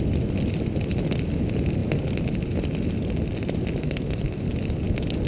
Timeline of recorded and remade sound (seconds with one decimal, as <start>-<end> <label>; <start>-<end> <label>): 0.0-5.3 recorded